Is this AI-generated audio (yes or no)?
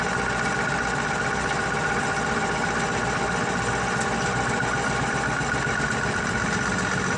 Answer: no